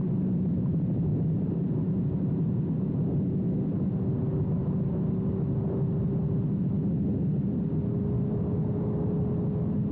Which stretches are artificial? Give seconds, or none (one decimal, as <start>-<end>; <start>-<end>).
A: none